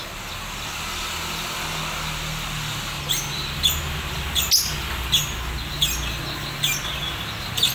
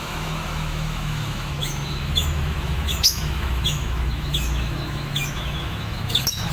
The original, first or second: first